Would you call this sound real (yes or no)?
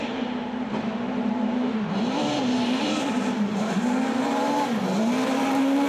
no